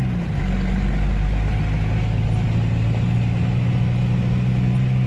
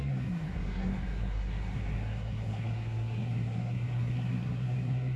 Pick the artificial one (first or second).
second